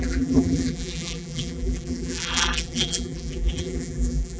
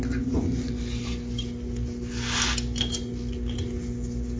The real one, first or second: second